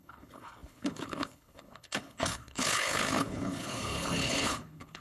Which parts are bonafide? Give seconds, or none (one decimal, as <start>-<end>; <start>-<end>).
none